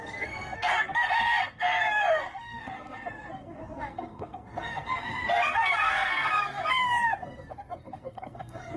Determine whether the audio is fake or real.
fake